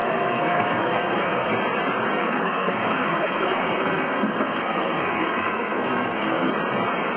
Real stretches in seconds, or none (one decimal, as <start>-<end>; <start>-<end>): 1.5-2.2; 6.5-7.2